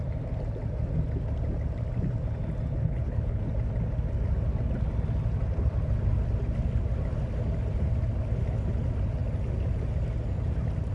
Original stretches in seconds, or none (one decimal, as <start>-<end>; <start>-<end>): 0.0-2.8; 3.4-10.9